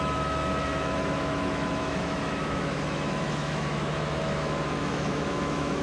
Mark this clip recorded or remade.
remade